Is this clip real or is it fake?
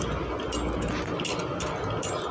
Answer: real